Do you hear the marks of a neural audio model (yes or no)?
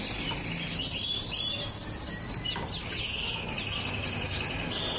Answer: no